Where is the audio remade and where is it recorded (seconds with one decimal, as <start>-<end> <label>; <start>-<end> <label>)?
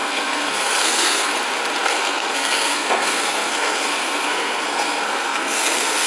0.0-1.3 remade; 1.3-1.8 recorded; 1.8-6.1 remade